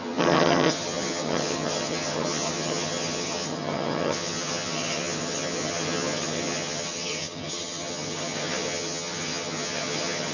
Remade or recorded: remade